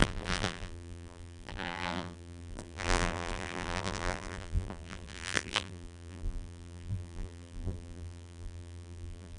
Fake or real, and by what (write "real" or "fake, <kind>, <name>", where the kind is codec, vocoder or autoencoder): fake, vocoder, BigVGAN v2